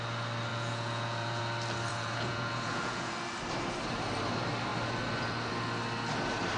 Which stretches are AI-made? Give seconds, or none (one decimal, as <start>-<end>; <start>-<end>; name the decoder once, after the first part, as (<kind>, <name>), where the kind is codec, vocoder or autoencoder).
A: 0.5-1.4 (vocoder, Vocos); 1.9-3.1